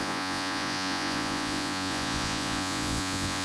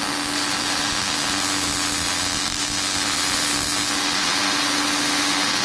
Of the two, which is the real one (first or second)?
second